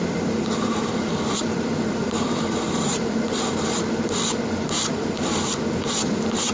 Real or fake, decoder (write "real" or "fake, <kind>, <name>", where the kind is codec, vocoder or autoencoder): fake, vocoder, BigVGAN v2